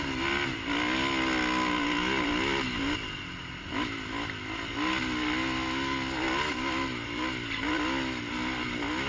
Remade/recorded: recorded